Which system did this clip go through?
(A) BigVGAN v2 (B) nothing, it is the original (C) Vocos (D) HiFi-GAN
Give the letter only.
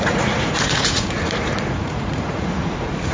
C